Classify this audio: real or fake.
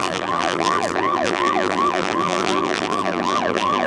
fake